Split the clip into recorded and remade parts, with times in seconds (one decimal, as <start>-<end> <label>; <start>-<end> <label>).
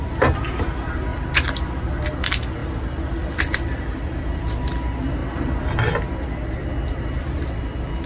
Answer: 0.0-1.1 recorded; 1.1-1.7 remade; 1.7-5.2 recorded; 5.2-5.8 remade; 5.8-8.1 recorded